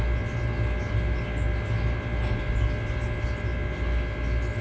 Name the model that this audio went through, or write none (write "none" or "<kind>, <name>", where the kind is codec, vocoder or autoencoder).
none